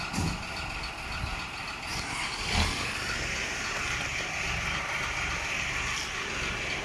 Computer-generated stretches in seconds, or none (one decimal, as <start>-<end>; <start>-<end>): none